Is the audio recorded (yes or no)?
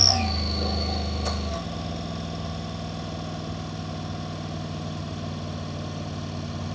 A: yes